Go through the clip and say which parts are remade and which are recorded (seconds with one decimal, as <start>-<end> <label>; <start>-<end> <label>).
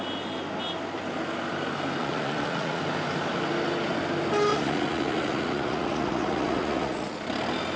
0.0-2.0 recorded; 2.0-2.8 remade; 2.8-4.5 recorded; 4.5-7.2 remade; 7.2-7.8 recorded